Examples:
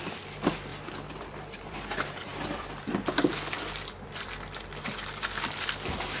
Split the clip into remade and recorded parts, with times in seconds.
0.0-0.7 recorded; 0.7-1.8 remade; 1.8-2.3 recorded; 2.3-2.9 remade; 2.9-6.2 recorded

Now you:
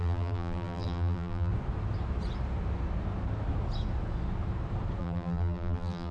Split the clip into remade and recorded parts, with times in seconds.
0.0-1.5 remade; 1.5-5.0 recorded; 5.0-6.1 remade